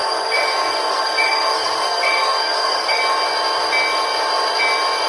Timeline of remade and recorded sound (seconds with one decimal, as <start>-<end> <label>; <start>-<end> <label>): 0.0-3.0 remade; 3.0-5.1 recorded